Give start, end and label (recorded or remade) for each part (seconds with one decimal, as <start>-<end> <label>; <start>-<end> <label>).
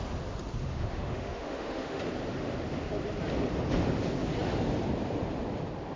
0.0-0.6 recorded; 0.6-2.0 remade; 2.0-6.0 recorded